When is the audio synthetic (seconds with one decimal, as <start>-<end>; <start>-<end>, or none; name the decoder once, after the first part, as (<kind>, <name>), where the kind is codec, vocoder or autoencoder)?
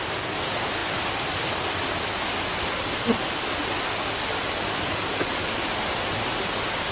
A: none